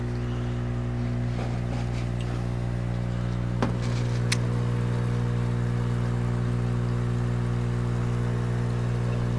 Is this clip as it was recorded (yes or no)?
yes